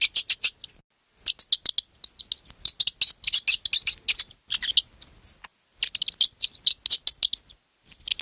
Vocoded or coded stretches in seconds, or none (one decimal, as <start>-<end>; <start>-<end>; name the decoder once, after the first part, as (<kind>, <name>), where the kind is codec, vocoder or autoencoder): none